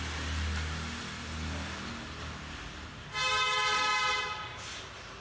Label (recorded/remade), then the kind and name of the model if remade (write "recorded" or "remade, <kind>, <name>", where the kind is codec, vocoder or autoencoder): recorded